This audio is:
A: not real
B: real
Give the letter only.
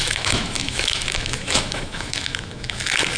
A